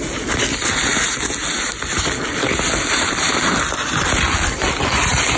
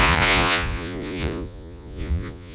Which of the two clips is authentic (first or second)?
first